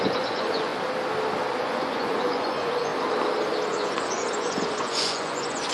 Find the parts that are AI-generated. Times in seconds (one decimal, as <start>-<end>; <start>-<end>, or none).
0.0-0.7; 1.6-2.9; 3.7-5.7